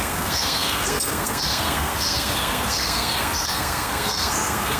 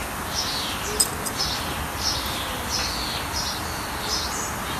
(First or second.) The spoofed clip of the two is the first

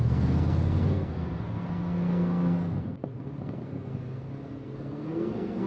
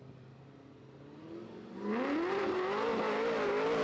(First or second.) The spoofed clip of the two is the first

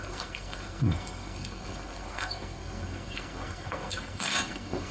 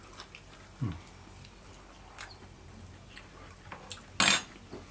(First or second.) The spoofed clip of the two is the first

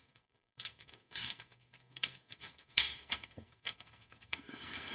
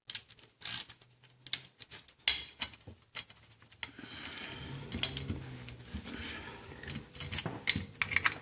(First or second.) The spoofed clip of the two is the first